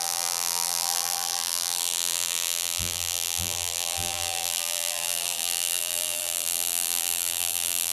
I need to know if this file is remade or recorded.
remade